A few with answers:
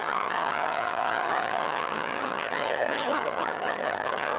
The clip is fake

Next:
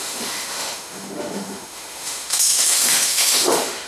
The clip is fake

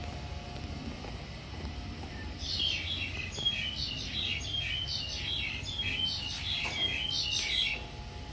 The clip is real